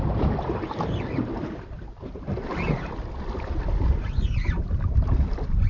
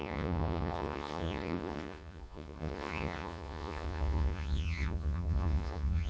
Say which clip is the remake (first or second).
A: second